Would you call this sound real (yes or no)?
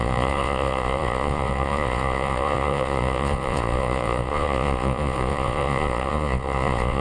no